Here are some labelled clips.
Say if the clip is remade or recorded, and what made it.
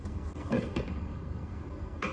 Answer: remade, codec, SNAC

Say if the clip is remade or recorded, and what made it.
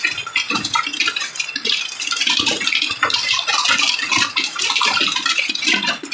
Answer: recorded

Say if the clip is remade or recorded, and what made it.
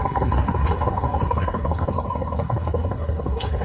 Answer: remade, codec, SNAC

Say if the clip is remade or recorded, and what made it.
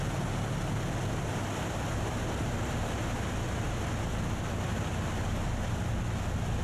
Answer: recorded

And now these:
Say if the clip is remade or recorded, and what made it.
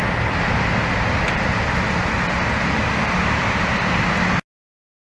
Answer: recorded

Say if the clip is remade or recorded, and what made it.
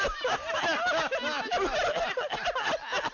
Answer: recorded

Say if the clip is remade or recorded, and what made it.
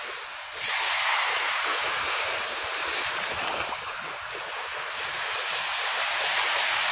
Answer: recorded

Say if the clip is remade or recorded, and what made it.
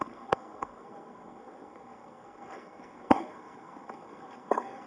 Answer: remade, codec, SNAC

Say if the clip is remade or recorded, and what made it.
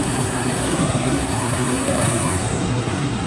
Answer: remade, codec, SNAC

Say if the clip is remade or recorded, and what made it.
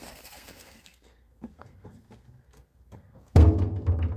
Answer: remade, codec, SNAC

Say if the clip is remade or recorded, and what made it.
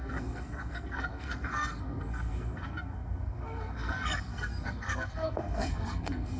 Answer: remade, codec, SNAC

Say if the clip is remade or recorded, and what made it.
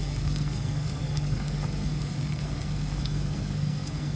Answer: remade, codec, SNAC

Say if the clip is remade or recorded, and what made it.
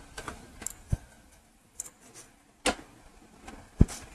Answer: recorded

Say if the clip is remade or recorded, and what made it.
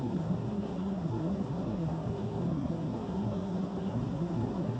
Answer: remade, codec, SNAC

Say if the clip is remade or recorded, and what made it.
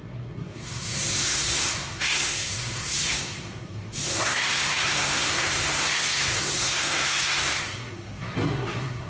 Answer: remade, codec, SNAC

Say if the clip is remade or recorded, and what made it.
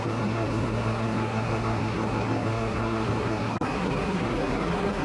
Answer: remade, codec, SNAC